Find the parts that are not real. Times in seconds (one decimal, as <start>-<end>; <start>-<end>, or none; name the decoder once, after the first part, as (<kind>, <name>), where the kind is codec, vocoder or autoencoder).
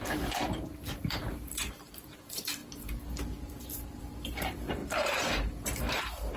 0.0-2.6 (vocoder, BigVGAN v2); 3.2-6.4